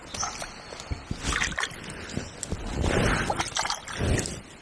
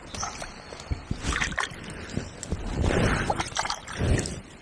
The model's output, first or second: second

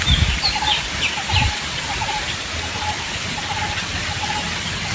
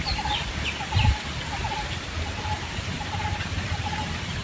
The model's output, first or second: second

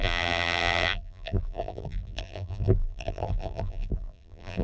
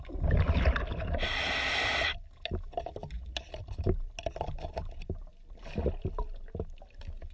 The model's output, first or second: first